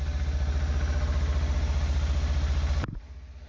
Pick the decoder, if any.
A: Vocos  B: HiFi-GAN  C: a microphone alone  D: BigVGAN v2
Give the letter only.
C